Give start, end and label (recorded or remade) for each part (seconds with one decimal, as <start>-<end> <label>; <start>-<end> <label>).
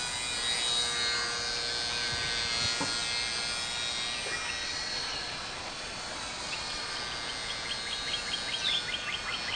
0.0-4.6 recorded; 4.6-7.0 remade; 7.0-9.6 recorded